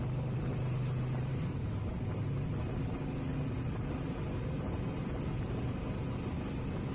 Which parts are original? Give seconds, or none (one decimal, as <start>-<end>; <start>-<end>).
0.0-6.9